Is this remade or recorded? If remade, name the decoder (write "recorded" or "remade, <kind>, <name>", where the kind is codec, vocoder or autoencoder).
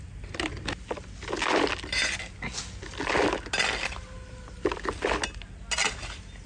recorded